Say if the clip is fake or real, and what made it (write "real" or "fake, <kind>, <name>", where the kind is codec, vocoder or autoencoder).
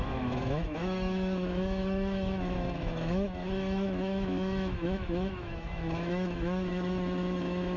fake, autoencoder, DAC-VAE